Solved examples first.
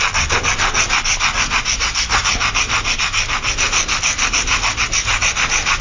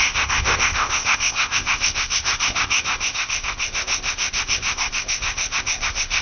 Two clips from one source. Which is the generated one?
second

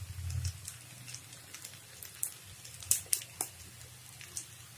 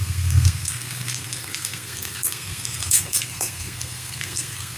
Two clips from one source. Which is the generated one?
second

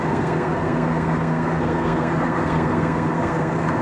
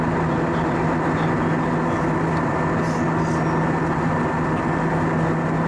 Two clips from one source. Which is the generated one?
first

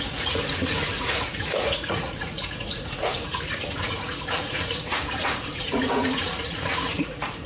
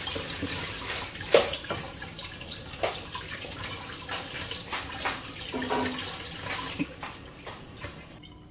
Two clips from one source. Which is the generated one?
first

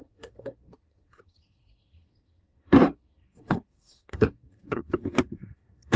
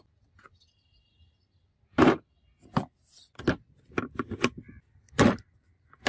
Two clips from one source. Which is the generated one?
first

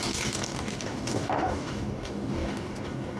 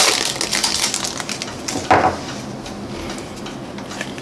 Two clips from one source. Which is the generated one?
first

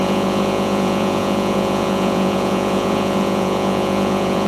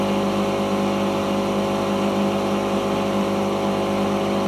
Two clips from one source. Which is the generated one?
first